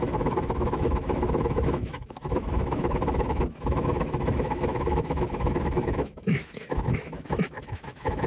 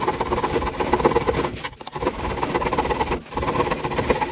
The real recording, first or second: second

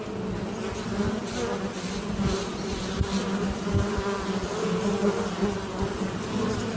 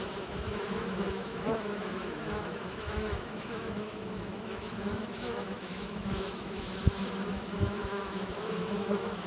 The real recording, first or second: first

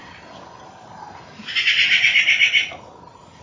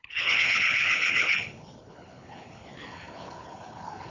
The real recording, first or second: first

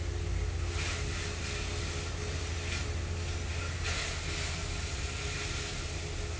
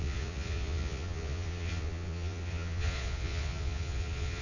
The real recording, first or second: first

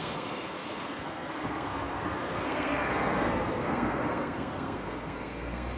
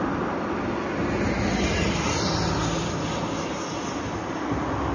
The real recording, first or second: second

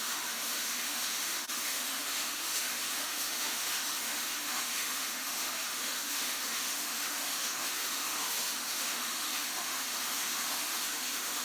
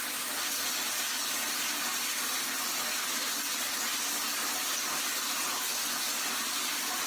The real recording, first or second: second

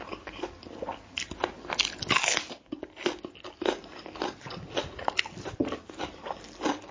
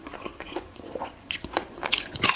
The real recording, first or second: first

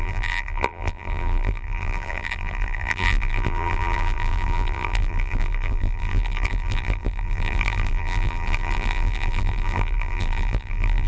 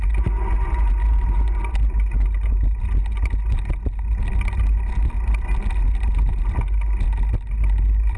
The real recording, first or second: second